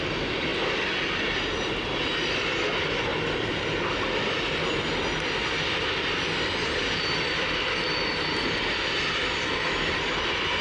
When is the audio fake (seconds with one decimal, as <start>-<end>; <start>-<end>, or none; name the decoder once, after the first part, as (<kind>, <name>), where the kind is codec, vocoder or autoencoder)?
none